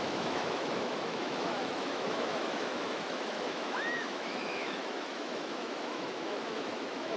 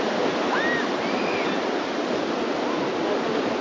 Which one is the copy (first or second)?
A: first